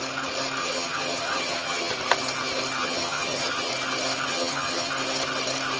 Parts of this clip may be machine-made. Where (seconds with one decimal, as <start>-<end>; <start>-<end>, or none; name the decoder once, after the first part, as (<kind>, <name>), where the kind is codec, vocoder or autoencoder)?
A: 0.6-1.9 (vocoder, HiFi-GAN); 2.8-3.7; 4.3-4.9